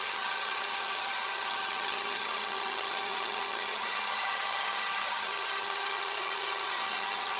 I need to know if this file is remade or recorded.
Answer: remade